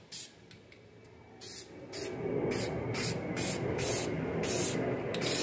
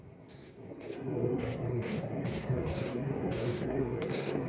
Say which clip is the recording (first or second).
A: first